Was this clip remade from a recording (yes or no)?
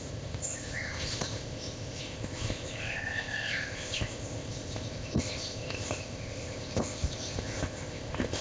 yes